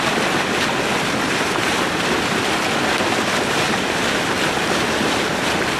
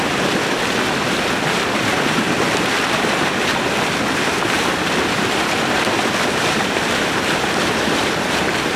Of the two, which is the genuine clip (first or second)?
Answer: first